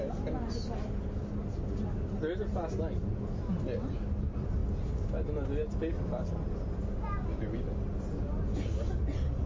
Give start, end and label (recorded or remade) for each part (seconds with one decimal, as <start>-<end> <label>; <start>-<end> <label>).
0.0-9.5 recorded